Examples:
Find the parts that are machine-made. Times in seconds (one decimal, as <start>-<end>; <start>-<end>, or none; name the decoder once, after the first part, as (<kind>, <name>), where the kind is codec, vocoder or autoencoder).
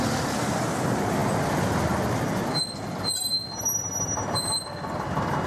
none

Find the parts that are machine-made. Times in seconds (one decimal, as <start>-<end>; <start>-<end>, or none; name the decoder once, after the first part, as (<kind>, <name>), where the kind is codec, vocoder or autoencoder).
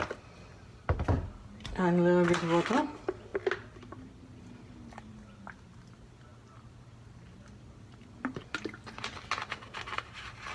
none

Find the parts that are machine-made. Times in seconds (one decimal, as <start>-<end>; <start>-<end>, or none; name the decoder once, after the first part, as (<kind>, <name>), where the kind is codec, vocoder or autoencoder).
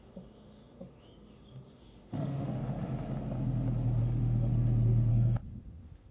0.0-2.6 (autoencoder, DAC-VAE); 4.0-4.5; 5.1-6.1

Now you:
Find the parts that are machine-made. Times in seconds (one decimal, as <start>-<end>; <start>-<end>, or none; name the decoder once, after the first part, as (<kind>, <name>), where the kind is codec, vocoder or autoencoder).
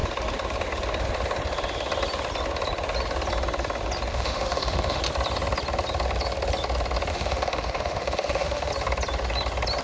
4.1-5.0 (autoencoder, DAC-VAE); 7.1-8.7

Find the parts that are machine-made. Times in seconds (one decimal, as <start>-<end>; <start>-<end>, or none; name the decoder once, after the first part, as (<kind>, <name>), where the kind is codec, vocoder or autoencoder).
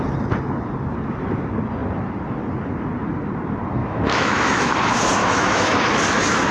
3.8-4.7 (autoencoder, DAC-VAE); 5.2-5.8